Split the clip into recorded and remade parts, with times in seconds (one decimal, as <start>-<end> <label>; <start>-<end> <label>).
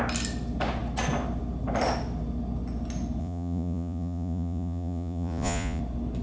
0.0-3.2 recorded; 3.2-5.8 remade; 5.8-6.2 recorded